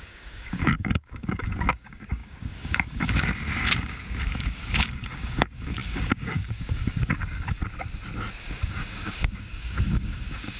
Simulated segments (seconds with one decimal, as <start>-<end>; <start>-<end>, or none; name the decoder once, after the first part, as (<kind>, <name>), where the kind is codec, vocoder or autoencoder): 0.0-7.6 (codec, DAC); 8.4-10.6